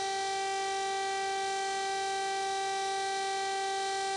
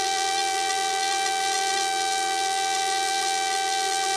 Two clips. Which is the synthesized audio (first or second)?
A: second